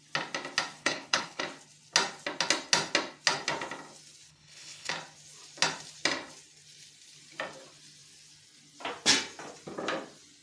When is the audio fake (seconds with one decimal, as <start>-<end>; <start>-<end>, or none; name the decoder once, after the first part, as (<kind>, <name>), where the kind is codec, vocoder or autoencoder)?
0.8-1.4 (codec, HILCodec); 4.3-4.9